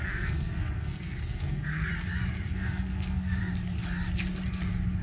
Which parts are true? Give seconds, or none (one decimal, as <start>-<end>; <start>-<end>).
1.9-2.5; 3.4-5.0